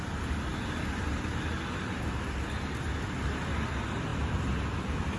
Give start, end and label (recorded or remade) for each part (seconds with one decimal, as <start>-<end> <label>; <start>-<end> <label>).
0.0-5.2 recorded